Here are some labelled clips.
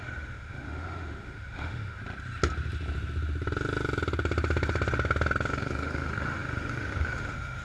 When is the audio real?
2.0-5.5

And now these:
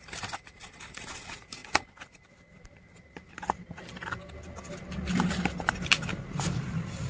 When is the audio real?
1.6-5.1

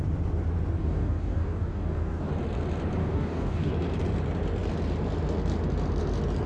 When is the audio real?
0.0-0.8; 2.3-3.0; 3.7-6.5